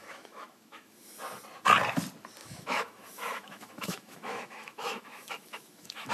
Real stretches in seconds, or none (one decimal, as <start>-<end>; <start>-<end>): 1.2-2.4